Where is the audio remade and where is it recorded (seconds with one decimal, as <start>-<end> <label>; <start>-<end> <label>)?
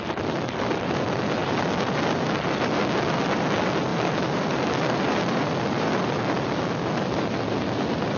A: 0.0-3.9 recorded; 3.9-6.9 remade; 6.9-8.2 recorded